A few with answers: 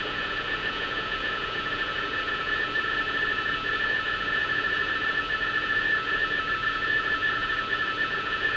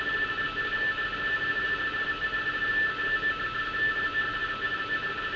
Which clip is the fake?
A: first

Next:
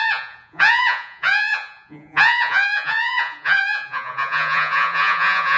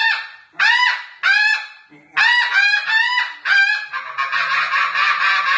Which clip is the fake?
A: first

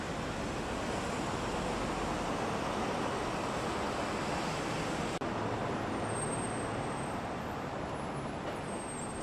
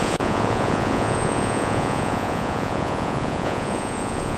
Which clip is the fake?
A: second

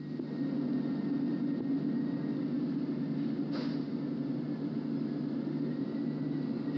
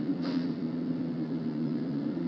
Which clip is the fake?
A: second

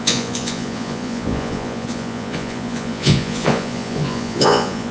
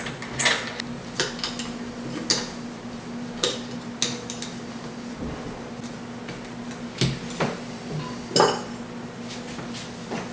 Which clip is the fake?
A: first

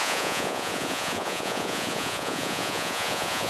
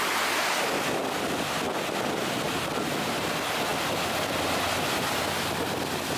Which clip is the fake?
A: first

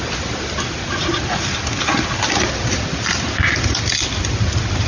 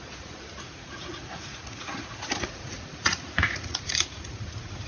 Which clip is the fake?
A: second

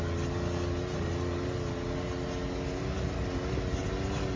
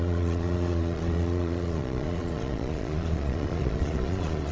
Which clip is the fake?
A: second